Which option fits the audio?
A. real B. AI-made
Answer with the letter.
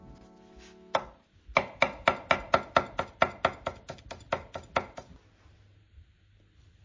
A